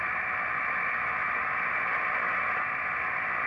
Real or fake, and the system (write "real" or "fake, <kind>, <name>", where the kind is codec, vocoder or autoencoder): real